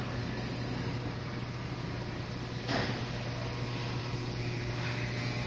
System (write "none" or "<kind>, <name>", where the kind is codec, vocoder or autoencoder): none